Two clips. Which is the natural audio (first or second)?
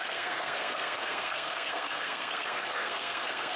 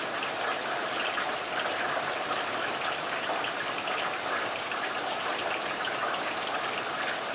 second